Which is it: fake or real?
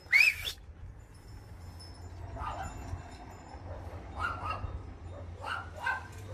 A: real